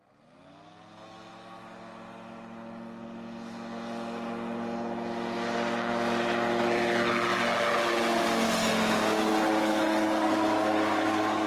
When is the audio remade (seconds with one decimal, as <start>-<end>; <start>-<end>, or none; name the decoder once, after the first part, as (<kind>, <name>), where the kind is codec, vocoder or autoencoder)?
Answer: 9.5-11.5 (codec, DAC)